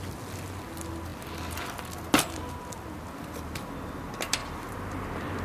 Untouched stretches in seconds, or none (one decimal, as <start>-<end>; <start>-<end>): 0.0-5.4